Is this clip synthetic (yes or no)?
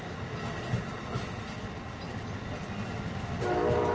no